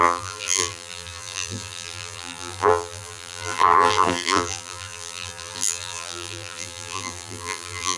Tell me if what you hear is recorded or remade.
remade